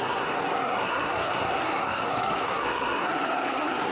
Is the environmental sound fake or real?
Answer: fake